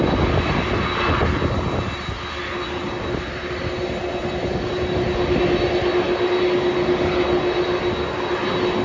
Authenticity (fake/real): real